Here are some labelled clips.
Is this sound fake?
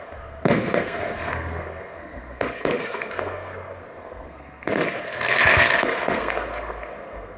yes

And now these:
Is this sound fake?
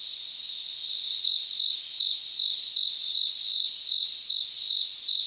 no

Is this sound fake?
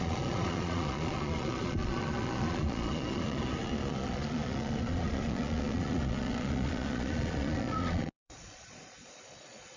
yes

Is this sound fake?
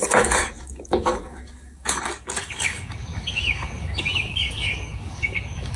yes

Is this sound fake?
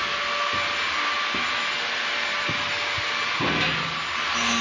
no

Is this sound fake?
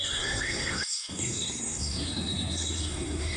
yes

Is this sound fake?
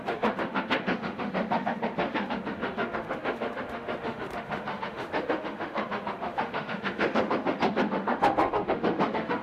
yes